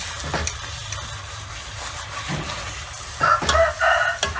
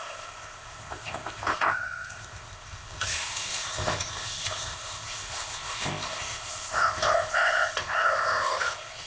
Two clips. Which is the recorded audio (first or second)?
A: first